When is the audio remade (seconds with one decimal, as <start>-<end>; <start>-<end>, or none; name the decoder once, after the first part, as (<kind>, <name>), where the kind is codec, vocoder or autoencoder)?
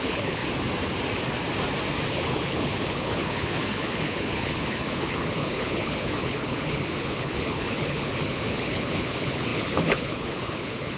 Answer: 0.0-0.4 (codec, HILCodec); 2.1-11.0